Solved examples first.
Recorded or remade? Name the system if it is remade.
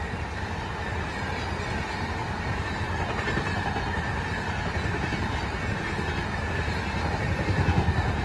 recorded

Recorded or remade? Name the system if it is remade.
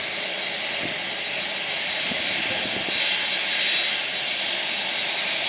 recorded